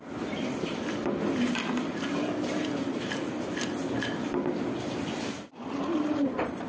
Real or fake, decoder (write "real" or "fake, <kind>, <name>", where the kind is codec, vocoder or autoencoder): real